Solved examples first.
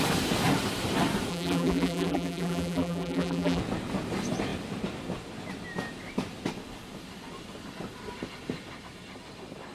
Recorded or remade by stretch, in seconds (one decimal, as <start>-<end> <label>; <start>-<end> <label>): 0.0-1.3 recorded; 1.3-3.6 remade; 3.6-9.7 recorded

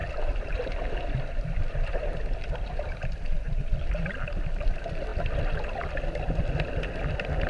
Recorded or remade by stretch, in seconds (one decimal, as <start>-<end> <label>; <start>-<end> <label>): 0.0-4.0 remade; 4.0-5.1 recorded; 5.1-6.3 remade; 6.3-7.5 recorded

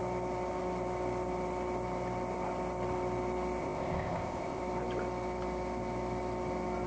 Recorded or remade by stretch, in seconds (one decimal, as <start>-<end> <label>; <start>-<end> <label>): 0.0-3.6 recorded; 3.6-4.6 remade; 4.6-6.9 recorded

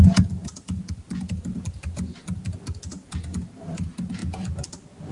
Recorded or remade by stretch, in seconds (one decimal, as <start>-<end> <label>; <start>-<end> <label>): 0.0-4.2 remade; 4.2-5.1 recorded

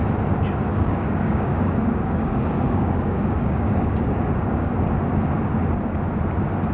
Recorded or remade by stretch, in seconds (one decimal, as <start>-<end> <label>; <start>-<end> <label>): 0.0-0.7 recorded; 0.7-4.7 remade; 4.7-6.7 recorded

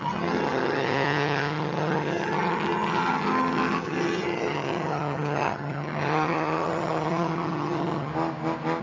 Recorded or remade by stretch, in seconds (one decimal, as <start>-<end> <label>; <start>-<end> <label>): 0.0-8.1 remade; 8.1-8.8 recorded

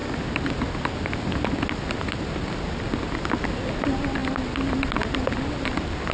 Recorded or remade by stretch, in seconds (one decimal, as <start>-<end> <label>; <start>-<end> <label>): 0.0-6.1 recorded

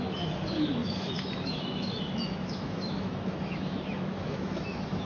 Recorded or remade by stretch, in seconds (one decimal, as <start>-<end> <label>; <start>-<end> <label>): 0.0-5.0 remade